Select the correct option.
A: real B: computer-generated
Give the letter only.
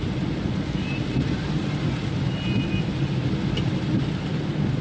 A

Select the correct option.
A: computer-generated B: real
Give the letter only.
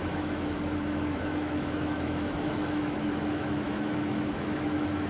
A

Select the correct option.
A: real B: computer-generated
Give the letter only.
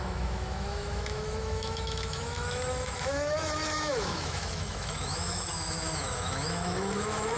B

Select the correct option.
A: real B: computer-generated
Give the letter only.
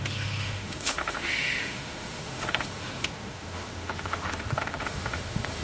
B